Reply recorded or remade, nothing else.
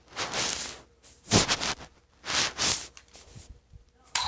remade